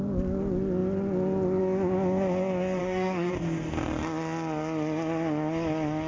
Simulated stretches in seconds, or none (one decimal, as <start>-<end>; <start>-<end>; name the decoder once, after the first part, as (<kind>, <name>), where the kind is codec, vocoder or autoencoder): 2.8-3.3 (codec, DAC)